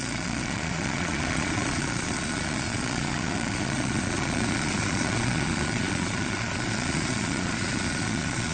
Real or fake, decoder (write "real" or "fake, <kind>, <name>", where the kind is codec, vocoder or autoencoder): fake, vocoder, Vocos